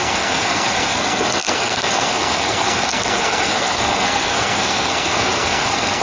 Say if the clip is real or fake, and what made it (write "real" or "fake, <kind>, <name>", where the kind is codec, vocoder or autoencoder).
fake, codec, SNAC